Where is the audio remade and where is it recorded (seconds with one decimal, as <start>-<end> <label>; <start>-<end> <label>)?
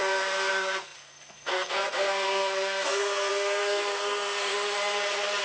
0.0-4.5 remade; 4.5-5.4 recorded